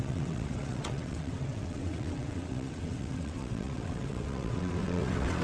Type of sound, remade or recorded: remade